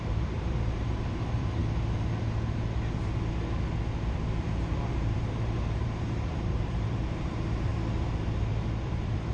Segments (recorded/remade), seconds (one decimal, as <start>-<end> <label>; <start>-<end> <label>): 0.0-1.6 remade; 1.6-4.5 recorded; 4.5-7.7 remade; 7.7-8.8 recorded; 8.8-9.3 remade